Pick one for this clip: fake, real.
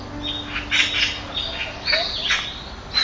real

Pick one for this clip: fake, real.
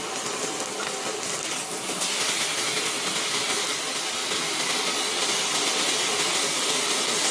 real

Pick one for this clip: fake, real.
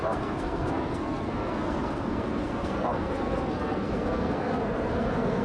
fake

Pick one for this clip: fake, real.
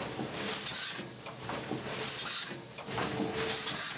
real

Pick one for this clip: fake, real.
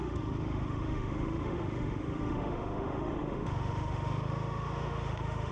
fake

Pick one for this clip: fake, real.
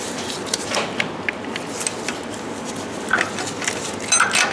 real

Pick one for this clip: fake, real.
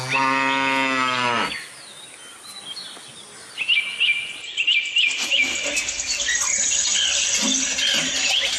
real